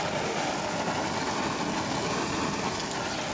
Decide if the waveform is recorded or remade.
recorded